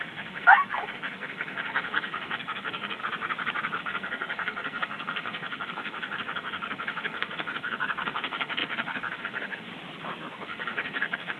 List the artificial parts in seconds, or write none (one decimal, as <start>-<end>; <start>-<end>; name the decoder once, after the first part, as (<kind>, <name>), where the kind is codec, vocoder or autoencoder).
0.0-3.0 (codec, SNAC); 3.8-9.7; 10.2-11.4

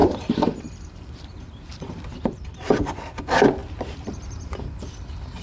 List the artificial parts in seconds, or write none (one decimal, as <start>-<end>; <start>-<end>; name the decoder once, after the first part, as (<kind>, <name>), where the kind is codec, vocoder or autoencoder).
0.0-3.2 (vocoder, BigVGAN v2); 3.6-4.8

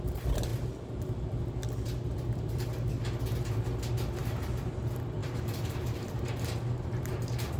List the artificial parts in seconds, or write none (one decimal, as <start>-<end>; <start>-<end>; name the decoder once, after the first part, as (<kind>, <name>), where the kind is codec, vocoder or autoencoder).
5.2-7.6 (vocoder, BigVGAN v2)

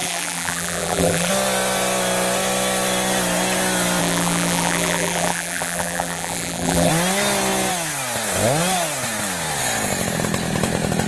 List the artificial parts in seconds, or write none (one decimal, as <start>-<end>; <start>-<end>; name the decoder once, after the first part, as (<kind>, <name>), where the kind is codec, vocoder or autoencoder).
0.0-1.3 (vocoder, BigVGAN v2); 4.0-6.9

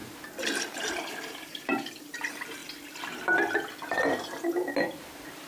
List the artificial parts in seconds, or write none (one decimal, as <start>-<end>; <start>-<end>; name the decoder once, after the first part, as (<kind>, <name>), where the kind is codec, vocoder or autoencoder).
0.0-2.6 (vocoder, BigVGAN v2); 5.1-5.5

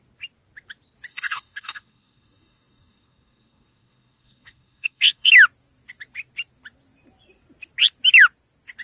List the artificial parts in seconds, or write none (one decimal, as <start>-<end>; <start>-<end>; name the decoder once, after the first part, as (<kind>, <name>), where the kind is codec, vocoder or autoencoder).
1.1-5.3 (codec, DAC)

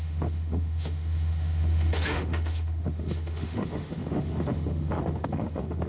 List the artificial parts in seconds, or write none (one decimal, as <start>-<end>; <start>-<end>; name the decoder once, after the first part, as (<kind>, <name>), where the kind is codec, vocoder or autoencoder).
0.0-5.9 (autoencoder, DAC-VAE)